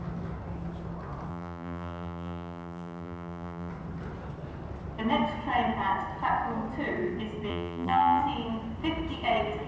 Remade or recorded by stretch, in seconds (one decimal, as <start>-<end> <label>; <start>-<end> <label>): 0.0-1.3 recorded; 1.3-3.7 remade; 3.7-7.5 recorded; 7.5-8.2 remade; 8.2-9.7 recorded